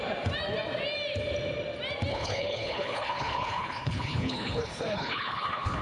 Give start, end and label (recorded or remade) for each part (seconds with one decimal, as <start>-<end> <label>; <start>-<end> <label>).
0.0-2.1 recorded; 2.1-5.8 remade